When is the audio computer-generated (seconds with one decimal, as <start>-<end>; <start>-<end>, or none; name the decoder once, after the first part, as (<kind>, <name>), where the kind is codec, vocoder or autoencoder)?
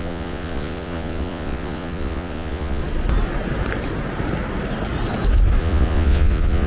0.0-2.8 (vocoder, Vocos); 5.6-6.7